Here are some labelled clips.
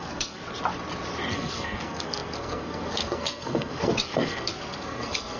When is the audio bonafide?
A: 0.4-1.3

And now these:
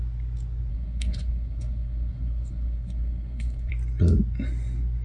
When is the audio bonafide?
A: 0.0-0.7; 3.7-5.0

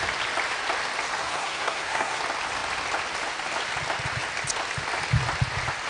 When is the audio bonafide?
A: 0.0-1.2; 2.2-5.9

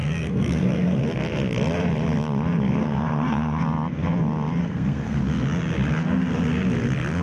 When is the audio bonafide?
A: 1.0-2.8; 3.6-4.6; 5.2-7.2

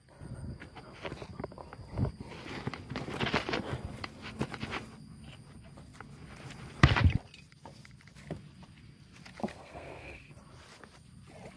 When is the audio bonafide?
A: 0.0-9.5; 10.3-11.6

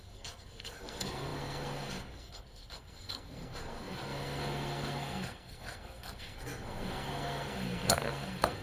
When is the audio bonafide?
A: none

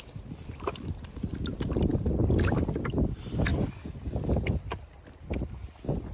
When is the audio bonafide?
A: 0.0-6.1